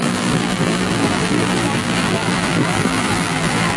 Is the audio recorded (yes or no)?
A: no